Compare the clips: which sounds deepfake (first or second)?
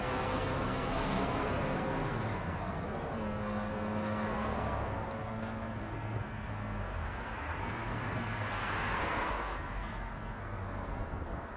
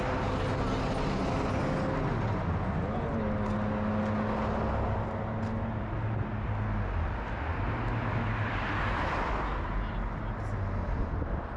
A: first